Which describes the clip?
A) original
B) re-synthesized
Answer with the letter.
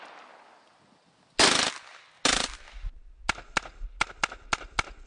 A